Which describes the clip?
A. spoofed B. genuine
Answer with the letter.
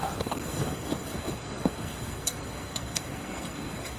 A